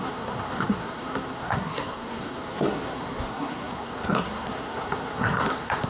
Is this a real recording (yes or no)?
no